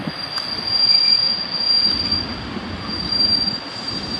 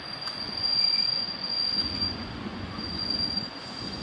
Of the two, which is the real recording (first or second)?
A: first